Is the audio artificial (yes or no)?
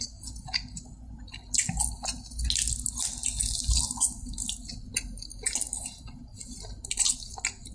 no